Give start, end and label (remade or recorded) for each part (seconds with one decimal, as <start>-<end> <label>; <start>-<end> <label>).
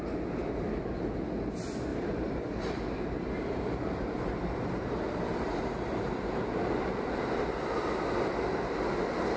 0.0-1.9 recorded; 1.9-7.1 remade; 7.1-9.4 recorded